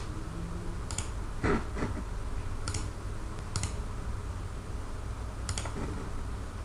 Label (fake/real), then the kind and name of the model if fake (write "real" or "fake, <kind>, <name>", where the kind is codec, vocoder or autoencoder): real